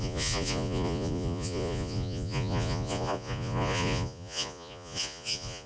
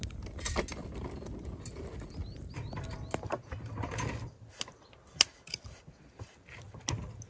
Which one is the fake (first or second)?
first